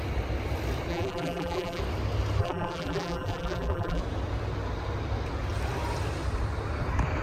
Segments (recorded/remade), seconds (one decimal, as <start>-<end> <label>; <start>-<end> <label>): 0.0-0.9 recorded; 0.9-1.8 remade; 1.8-2.4 recorded; 2.4-4.0 remade; 4.0-7.2 recorded